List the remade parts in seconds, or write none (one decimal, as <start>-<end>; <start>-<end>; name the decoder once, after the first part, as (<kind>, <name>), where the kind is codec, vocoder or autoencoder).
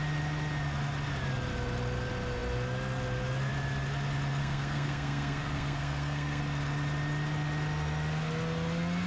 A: 4.4-6.4 (codec, SNAC)